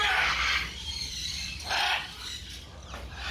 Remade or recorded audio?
remade